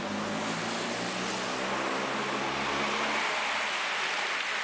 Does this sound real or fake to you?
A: real